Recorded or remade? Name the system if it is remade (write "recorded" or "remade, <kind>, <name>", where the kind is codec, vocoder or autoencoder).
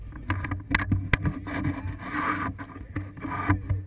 recorded